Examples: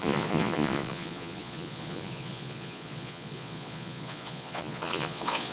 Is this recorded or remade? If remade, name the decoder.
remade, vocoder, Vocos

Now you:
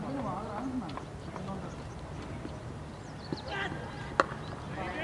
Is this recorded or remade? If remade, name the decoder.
recorded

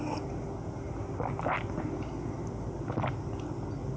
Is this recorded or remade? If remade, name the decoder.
recorded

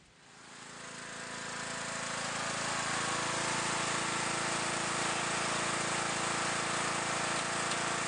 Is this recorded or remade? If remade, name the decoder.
recorded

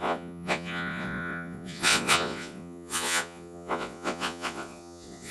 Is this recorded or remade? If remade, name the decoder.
remade, vocoder, Vocos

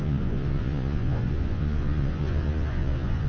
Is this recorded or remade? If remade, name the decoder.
remade, vocoder, Vocos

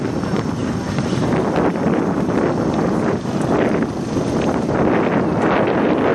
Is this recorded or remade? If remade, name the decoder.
recorded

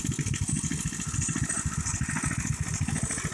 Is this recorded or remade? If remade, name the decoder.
recorded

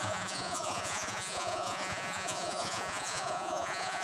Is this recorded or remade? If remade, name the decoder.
remade, vocoder, Vocos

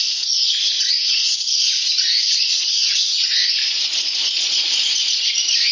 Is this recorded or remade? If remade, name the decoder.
remade, vocoder, Vocos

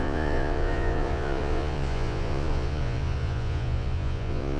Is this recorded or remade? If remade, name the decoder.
remade, vocoder, Vocos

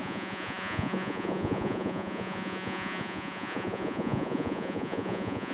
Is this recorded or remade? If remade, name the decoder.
remade, vocoder, Vocos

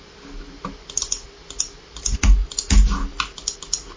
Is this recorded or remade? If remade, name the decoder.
recorded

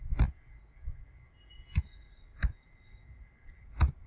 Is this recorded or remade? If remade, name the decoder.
recorded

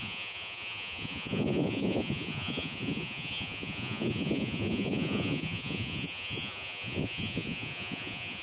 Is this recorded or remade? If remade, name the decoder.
remade, vocoder, Vocos